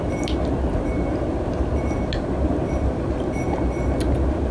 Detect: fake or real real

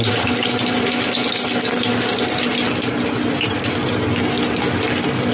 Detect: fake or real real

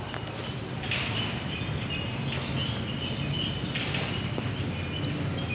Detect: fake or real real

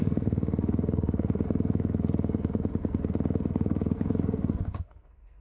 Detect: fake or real fake